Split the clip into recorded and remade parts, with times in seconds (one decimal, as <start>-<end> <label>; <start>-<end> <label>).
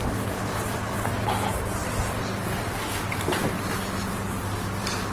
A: 0.0-5.1 remade